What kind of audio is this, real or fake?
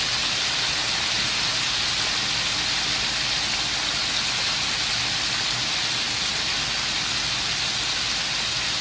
real